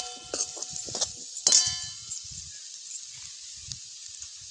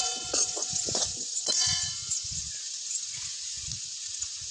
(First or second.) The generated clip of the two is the second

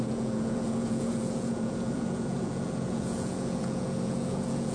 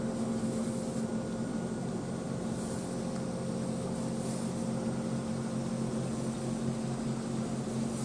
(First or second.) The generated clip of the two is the first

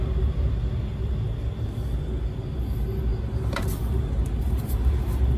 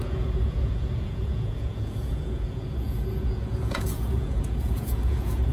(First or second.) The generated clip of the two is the second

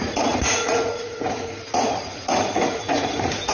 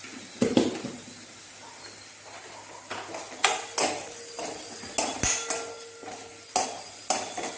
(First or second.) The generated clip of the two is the first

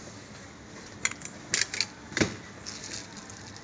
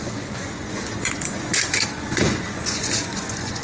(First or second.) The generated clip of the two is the second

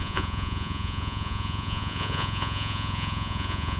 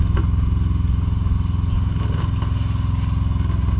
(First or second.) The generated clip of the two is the first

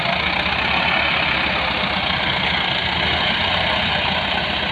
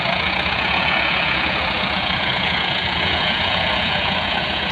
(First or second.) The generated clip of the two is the second